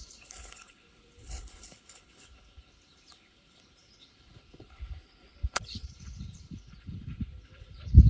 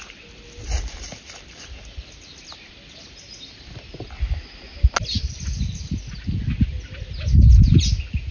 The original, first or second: second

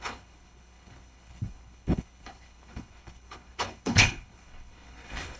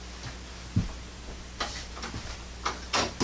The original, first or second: second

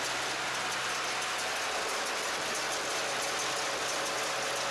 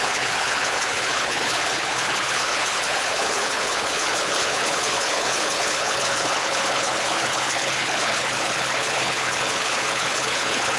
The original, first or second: first